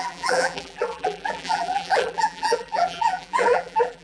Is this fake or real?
fake